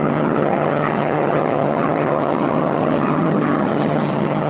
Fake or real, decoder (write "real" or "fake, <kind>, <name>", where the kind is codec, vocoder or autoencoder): fake, vocoder, HiFi-GAN